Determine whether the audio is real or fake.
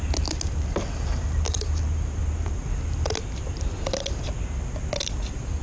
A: real